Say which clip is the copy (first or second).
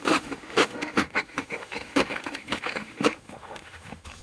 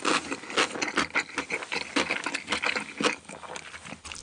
first